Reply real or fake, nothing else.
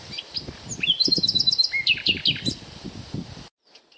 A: real